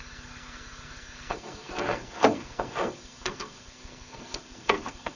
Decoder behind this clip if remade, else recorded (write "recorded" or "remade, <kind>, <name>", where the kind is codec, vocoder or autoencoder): remade, codec, SNAC